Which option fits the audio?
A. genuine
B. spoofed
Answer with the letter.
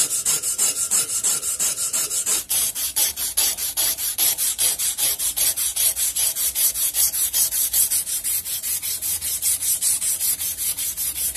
B